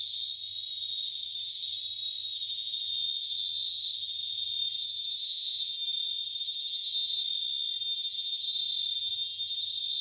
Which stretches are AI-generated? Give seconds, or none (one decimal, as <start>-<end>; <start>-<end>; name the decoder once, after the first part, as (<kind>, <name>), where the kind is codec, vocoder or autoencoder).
2.3-3.1 (vocoder, Vocos); 4.2-5.7